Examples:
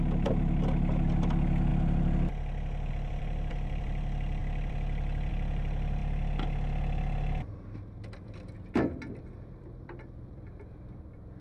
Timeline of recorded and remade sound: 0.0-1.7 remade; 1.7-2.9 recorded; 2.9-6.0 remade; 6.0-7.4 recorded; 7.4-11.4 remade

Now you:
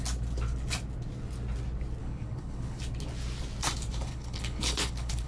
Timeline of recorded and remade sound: 0.0-2.0 recorded; 2.0-2.8 remade; 2.8-4.1 recorded; 4.1-5.3 remade

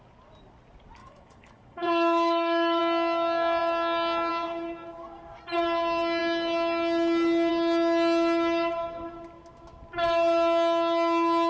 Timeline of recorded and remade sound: 0.0-1.0 recorded; 1.0-2.8 remade; 2.8-11.5 recorded

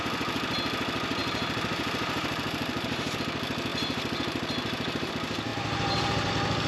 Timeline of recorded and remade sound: 0.0-1.2 recorded; 1.2-3.2 remade; 3.2-3.7 recorded; 3.7-5.1 remade; 5.1-5.5 recorded; 5.5-6.3 remade; 6.3-6.7 recorded

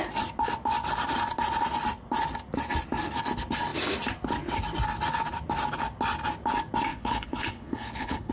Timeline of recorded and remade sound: 0.0-6.9 recorded; 6.9-8.3 remade